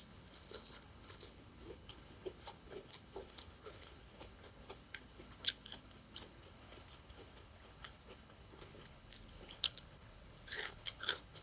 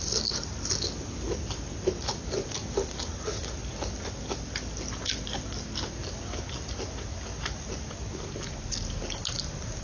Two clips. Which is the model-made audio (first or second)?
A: first